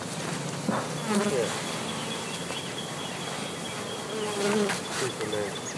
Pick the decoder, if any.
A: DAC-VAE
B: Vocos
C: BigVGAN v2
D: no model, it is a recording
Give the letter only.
D